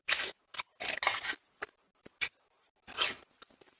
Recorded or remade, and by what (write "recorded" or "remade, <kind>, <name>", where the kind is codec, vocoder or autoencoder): recorded